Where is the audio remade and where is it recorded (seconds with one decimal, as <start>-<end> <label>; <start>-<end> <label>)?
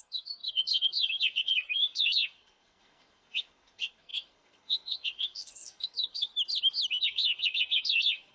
0.0-6.3 remade; 6.3-6.9 recorded; 6.9-8.3 remade